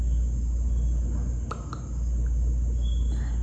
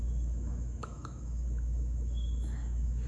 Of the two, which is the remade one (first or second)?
second